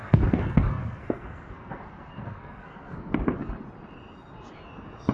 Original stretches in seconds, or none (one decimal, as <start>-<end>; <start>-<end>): 3.1-5.1